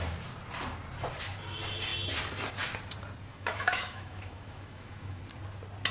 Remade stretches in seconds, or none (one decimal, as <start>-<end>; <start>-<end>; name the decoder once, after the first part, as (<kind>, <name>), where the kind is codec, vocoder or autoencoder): 3.3-5.2 (autoencoder, DAC-VAE)